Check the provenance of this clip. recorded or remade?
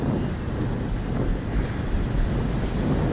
recorded